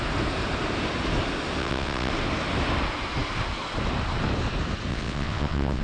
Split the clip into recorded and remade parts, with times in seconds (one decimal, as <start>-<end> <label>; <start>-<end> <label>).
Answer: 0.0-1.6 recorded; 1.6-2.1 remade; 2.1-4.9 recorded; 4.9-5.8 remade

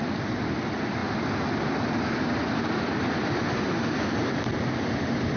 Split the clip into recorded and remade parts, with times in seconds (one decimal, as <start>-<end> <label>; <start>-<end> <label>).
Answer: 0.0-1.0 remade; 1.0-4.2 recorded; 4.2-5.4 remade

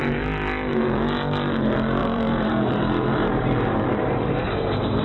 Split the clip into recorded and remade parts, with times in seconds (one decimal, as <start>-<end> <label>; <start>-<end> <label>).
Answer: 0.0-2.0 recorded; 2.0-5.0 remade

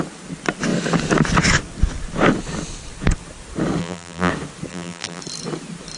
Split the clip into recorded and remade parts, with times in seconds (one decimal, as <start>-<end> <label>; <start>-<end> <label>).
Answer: 0.0-3.8 recorded; 3.8-4.3 remade; 4.3-4.7 recorded; 4.7-5.2 remade; 5.2-6.0 recorded

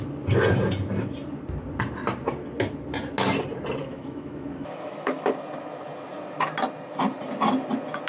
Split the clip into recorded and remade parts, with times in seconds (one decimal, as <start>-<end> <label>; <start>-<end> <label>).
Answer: 0.0-3.8 recorded; 3.8-5.3 remade; 5.3-8.1 recorded

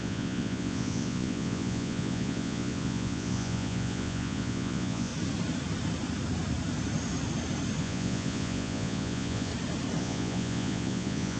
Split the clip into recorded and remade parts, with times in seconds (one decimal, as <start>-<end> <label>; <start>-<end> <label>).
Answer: 0.0-5.1 remade; 5.1-7.8 recorded; 7.8-9.5 remade; 9.5-10.0 recorded; 10.0-11.4 remade

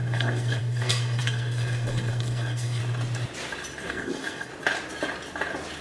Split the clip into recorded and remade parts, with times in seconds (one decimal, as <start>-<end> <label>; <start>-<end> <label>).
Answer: 0.0-2.8 remade; 2.8-3.9 recorded; 3.9-4.5 remade; 4.5-5.8 recorded